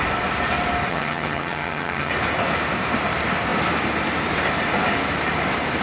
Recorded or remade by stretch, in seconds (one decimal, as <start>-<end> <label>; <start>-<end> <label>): 0.0-0.9 recorded; 0.9-2.1 remade; 2.1-5.8 recorded